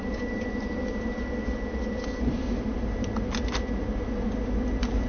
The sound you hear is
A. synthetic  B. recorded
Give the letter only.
B